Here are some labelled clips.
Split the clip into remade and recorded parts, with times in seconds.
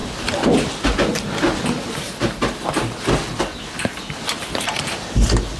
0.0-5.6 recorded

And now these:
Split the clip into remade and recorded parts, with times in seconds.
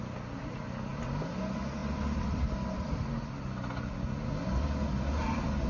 0.0-1.8 recorded; 1.8-3.3 remade; 3.3-5.7 recorded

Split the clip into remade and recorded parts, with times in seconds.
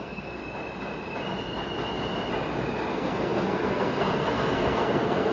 0.0-0.4 remade; 0.4-2.9 recorded; 2.9-5.3 remade